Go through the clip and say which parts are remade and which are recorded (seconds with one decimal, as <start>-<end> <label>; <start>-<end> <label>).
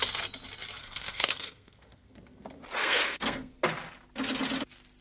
0.0-0.8 recorded; 0.8-2.2 remade; 2.2-2.8 recorded; 2.8-3.6 remade; 3.6-5.0 recorded